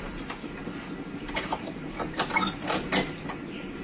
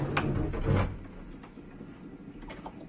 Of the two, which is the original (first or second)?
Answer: second